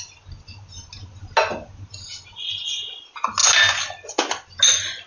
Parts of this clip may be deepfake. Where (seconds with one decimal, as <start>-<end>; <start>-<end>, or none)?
none